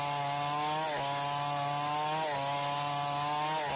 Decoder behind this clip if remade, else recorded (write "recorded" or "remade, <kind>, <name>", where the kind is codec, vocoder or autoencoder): recorded